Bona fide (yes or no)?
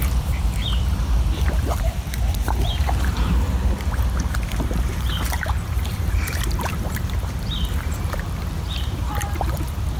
no